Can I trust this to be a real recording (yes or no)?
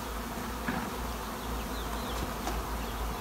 yes